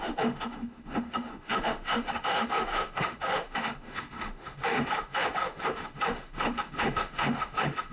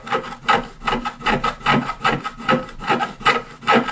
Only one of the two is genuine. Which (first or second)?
second